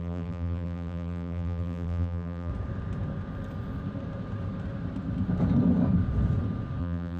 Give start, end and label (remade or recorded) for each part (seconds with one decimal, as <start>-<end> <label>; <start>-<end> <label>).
0.0-2.5 remade; 2.5-6.8 recorded; 6.8-7.2 remade